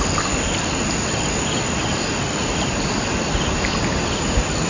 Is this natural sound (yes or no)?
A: yes